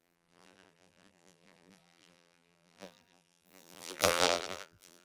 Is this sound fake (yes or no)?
yes